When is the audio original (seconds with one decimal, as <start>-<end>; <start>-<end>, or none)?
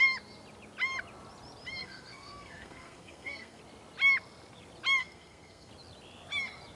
0.0-1.8; 3.6-5.0; 5.7-6.8